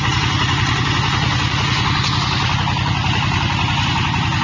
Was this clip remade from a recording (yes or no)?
no